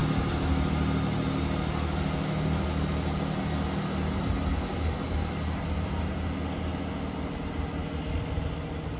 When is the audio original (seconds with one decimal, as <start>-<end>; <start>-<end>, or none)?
0.0-9.0